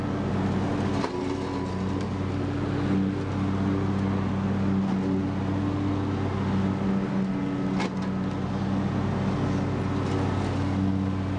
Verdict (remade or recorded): recorded